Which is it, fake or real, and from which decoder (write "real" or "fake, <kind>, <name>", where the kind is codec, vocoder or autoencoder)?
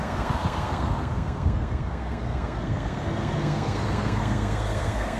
fake, codec, SNAC